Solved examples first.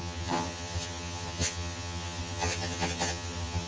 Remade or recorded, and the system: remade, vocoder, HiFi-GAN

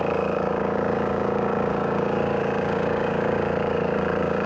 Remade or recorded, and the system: remade, codec, DAC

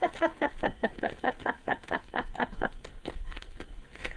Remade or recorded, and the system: remade, codec, SNAC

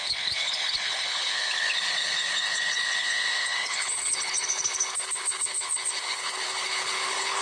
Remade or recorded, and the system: remade, codec, HILCodec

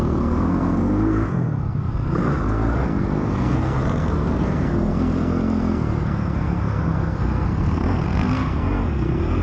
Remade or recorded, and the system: remade, codec, SNAC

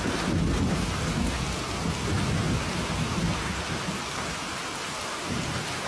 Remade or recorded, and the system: recorded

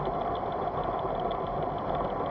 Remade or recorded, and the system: recorded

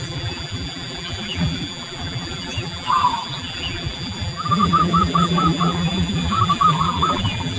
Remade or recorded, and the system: remade, vocoder, BigVGAN v2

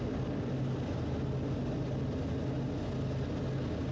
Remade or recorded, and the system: recorded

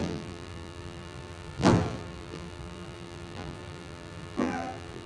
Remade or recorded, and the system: remade, vocoder, BigVGAN v2